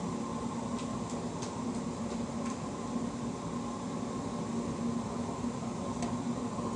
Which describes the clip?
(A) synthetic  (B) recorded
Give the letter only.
B